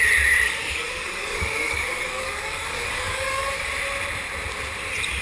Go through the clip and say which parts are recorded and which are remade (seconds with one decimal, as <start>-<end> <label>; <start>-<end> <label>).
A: 0.0-0.6 recorded; 0.6-3.7 remade; 3.7-5.2 recorded